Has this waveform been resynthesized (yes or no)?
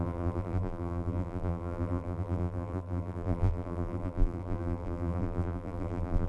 yes